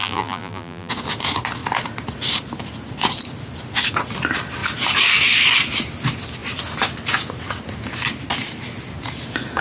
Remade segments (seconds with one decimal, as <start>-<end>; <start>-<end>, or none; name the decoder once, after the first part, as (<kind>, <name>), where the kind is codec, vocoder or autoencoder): 0.0-0.9 (vocoder, BigVGAN v2)